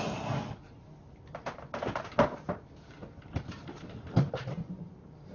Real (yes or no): yes